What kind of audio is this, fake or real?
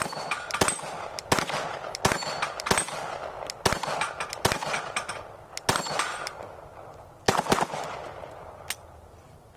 real